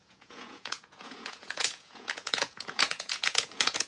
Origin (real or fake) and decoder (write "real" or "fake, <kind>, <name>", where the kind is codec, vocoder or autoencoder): fake, vocoder, Vocos